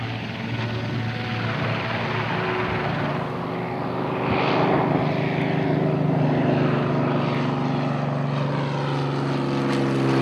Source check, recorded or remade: recorded